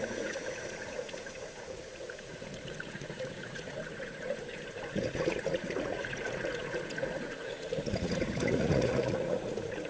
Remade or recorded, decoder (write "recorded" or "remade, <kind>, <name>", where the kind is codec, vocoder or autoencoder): remade, vocoder, Vocos